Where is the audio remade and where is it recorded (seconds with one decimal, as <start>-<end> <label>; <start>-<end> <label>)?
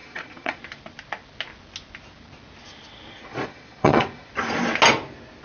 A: 0.0-0.6 remade; 0.6-3.3 recorded; 3.3-4.3 remade; 4.3-5.4 recorded